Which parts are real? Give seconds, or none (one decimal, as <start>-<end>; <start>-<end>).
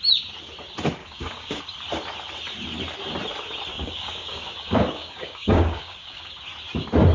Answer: 0.0-1.0; 1.6-3.7; 6.3-7.1